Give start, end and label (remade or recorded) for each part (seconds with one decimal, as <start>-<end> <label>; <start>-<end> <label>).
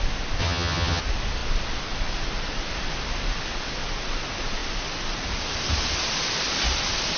0.0-0.4 recorded; 0.4-1.0 remade; 1.0-7.2 recorded